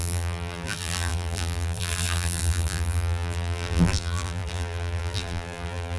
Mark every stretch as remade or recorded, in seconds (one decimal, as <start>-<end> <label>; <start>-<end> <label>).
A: 0.0-6.0 remade